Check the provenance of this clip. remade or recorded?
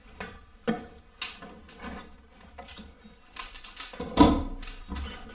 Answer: recorded